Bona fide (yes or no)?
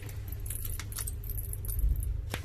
yes